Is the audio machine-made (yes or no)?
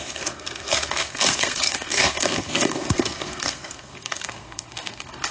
yes